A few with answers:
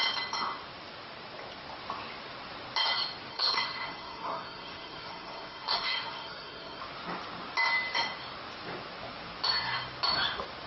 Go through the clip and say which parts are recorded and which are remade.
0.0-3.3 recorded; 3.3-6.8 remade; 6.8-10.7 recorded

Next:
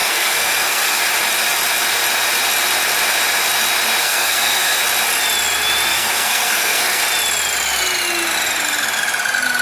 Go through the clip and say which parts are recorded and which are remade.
0.0-1.0 remade; 1.0-4.0 recorded; 4.0-4.8 remade; 4.8-5.9 recorded; 5.9-7.0 remade; 7.0-9.6 recorded

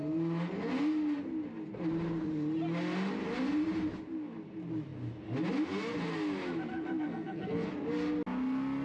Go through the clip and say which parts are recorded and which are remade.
0.0-6.7 recorded; 6.7-7.7 remade; 7.7-8.8 recorded